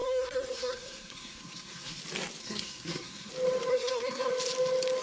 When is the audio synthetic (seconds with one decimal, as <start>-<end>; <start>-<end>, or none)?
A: 0.0-2.0; 2.4-3.3; 3.7-4.3